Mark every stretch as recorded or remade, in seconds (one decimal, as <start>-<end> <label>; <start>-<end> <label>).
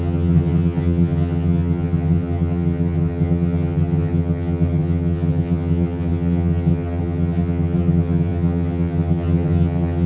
0.0-10.1 remade